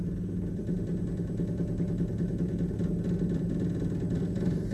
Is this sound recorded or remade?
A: recorded